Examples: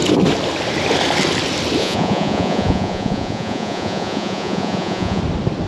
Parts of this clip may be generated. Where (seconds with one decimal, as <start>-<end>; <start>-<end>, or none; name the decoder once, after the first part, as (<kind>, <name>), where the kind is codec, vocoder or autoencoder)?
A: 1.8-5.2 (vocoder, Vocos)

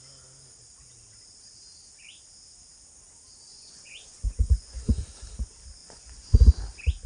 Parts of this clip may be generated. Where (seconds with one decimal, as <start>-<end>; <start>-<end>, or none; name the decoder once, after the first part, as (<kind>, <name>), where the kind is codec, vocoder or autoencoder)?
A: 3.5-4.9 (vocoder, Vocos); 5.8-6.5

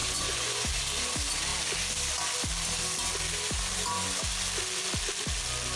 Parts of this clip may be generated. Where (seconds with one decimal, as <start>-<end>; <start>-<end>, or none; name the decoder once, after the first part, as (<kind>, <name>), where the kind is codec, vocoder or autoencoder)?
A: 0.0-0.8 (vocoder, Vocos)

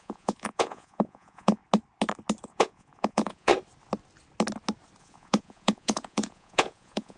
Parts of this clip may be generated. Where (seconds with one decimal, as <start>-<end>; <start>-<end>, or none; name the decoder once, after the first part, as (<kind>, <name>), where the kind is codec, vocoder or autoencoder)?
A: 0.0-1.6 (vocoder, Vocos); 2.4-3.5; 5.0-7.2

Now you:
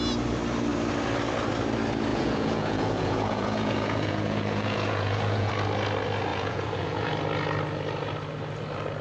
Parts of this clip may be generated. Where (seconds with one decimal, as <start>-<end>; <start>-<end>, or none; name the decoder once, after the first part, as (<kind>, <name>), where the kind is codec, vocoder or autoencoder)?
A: 2.1-5.5 (vocoder, Vocos); 6.3-7.1

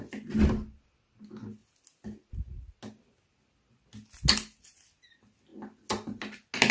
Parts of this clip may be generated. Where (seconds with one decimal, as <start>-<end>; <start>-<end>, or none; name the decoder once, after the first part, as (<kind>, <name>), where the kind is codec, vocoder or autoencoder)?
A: none

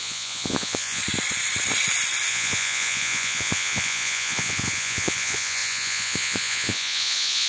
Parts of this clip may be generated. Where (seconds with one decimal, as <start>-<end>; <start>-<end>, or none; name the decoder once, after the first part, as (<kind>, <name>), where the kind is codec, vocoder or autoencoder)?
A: 0.0-1.0 (vocoder, Vocos); 2.3-7.5